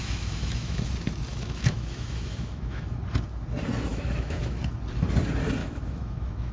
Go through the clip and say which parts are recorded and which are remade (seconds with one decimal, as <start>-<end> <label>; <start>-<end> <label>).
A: 0.0-0.9 remade; 0.9-1.3 recorded; 1.3-3.0 remade; 3.0-3.9 recorded; 3.9-4.6 remade; 4.6-5.6 recorded; 5.6-6.5 remade